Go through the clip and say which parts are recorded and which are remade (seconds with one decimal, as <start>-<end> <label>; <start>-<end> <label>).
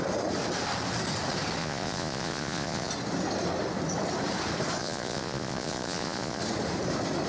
0.0-1.6 recorded; 1.6-2.9 remade; 2.9-4.8 recorded; 4.8-6.4 remade; 6.4-7.3 recorded